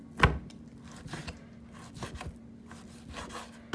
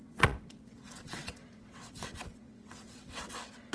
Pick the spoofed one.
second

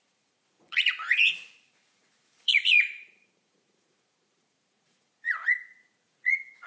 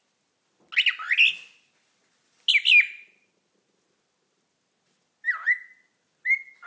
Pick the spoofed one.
first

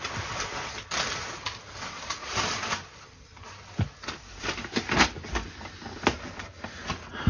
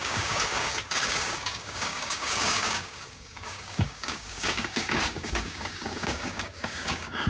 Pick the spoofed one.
second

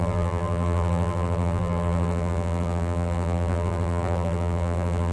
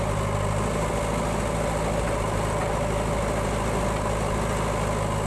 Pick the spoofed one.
first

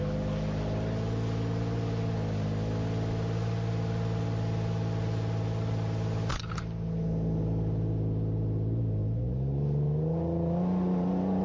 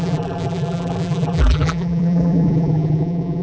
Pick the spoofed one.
second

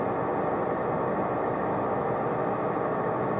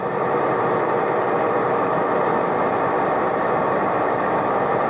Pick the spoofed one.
second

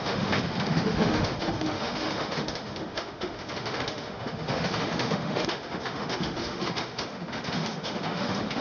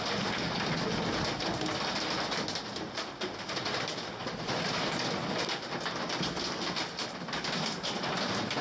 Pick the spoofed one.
first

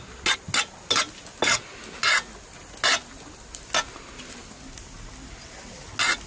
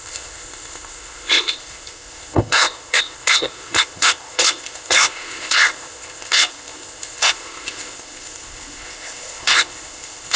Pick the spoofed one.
second